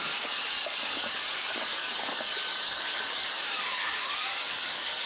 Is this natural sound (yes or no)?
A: no